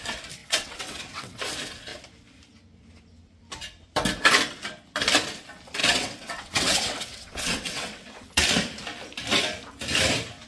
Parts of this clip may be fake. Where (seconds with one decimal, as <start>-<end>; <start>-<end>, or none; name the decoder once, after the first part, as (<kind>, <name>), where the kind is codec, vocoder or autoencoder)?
0.4-1.4 (vocoder, WaveNeXt); 5.8-8.4